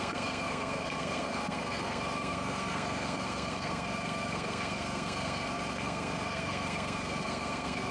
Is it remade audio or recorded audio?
remade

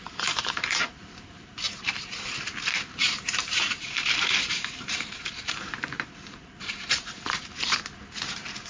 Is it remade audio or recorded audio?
remade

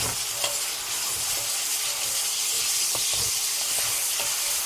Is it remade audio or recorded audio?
recorded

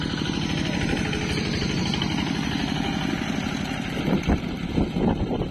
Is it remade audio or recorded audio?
recorded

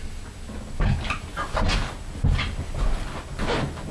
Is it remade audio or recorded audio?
recorded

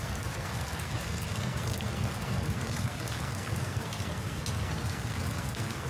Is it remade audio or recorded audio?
remade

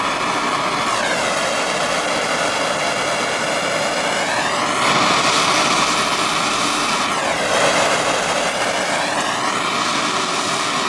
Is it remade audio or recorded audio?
recorded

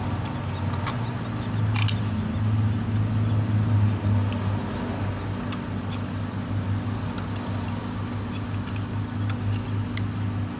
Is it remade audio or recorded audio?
recorded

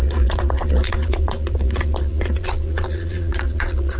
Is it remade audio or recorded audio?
remade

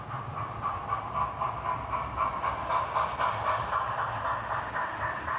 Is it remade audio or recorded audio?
recorded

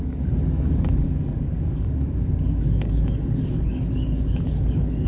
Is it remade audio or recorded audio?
remade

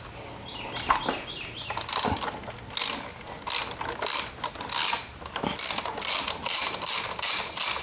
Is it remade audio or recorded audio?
recorded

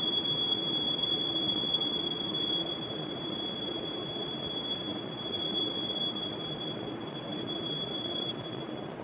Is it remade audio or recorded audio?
remade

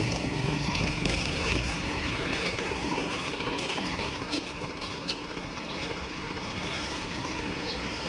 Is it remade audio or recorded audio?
remade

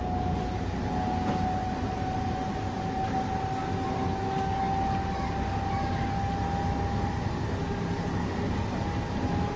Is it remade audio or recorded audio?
recorded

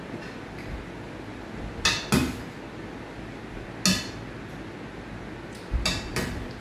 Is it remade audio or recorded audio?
recorded